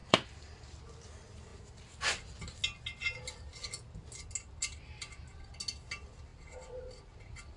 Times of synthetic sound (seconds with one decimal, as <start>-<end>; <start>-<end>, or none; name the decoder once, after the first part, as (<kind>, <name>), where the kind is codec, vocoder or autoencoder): 0.0-0.8 (vocoder, BigVGAN v2); 1.5-2.4; 6.3-7.6